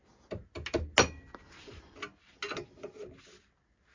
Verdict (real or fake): real